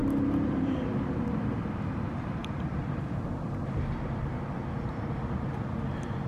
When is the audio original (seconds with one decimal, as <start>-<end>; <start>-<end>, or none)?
0.0-2.4; 4.9-6.3